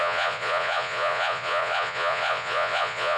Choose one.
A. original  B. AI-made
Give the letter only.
B